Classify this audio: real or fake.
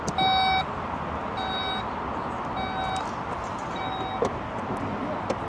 real